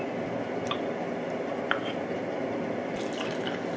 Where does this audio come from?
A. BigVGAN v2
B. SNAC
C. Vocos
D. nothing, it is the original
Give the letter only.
D